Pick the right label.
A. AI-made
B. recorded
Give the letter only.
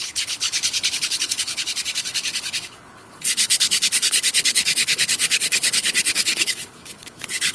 A